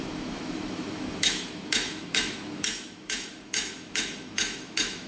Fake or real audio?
fake